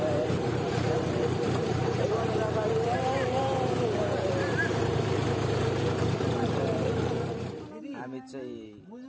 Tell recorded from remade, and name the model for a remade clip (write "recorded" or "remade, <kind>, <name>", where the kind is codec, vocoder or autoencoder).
remade, vocoder, BigVGAN v2